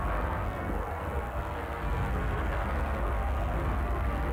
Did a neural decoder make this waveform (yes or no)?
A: yes